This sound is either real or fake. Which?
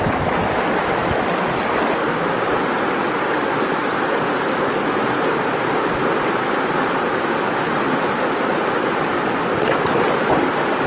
real